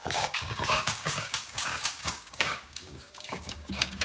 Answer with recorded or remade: remade